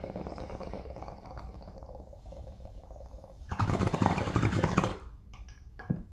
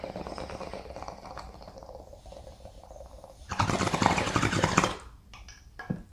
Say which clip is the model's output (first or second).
first